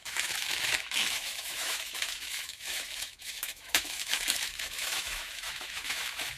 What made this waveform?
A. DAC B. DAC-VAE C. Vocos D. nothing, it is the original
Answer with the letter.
B